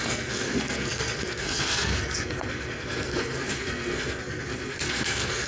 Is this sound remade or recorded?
remade